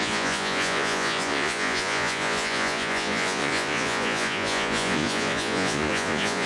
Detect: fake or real fake